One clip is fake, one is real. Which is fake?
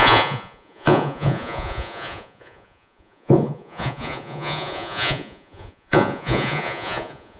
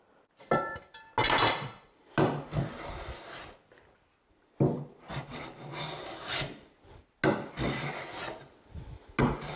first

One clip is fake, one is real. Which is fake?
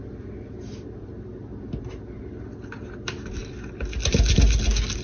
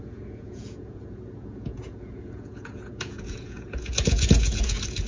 second